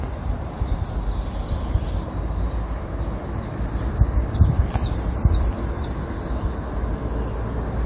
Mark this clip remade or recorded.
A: recorded